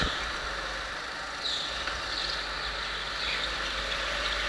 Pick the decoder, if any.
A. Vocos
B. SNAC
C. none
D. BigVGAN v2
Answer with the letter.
C